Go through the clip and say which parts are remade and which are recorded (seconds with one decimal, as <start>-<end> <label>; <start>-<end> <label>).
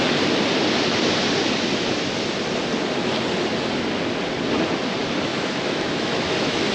0.0-5.3 recorded; 5.3-6.7 remade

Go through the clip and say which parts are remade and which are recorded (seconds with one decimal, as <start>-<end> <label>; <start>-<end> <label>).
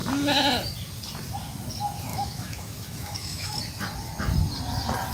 0.0-2.1 recorded; 2.1-3.6 remade; 3.6-5.1 recorded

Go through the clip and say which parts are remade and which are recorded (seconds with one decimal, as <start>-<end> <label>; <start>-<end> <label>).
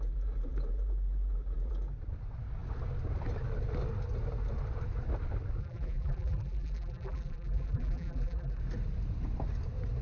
0.0-5.6 recorded; 5.6-8.6 remade; 8.6-10.0 recorded